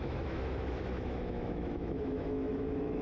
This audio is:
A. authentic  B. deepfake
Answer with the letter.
B